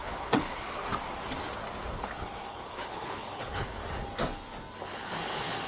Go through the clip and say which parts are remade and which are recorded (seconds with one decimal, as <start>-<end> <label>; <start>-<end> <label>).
0.0-0.8 remade; 0.8-1.9 recorded; 1.9-3.8 remade; 3.8-4.8 recorded; 4.8-5.7 remade